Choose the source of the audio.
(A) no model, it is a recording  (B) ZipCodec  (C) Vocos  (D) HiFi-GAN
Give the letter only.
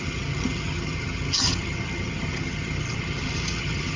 D